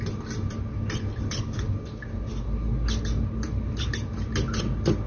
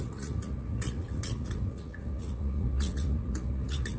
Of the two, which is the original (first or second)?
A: first